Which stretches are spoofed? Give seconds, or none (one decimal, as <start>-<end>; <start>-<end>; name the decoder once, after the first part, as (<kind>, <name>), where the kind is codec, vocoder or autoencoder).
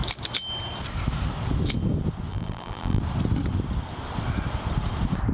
2.3-3.0 (vocoder, BigVGAN v2)